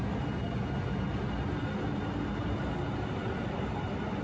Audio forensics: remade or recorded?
recorded